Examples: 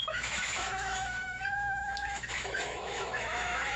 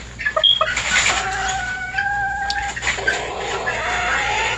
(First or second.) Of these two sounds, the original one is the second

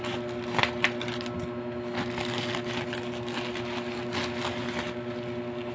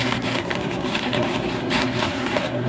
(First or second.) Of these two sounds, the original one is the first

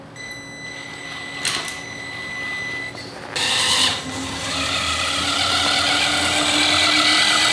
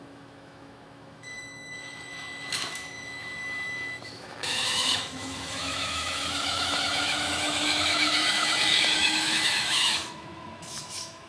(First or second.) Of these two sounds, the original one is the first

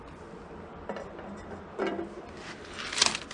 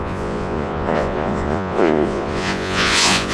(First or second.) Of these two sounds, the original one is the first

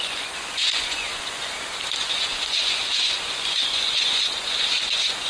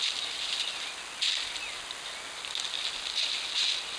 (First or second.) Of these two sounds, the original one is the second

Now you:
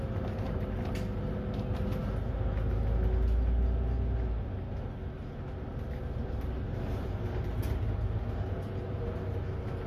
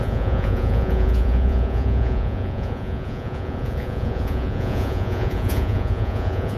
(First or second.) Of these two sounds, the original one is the first